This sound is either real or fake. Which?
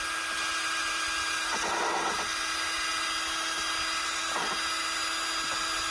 real